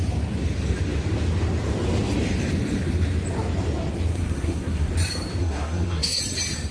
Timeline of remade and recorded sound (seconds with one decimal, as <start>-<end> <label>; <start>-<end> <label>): 0.0-4.1 recorded; 4.1-4.9 remade; 4.9-5.4 recorded; 5.4-6.2 remade; 6.2-6.7 recorded